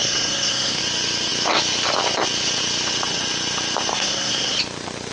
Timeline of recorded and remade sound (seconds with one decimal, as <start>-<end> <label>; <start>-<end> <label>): 0.0-0.8 remade; 0.8-3.9 recorded; 3.9-4.6 remade; 4.6-5.1 recorded